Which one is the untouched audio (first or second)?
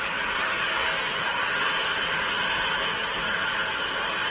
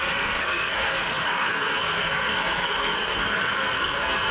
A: first